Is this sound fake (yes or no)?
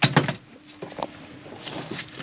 no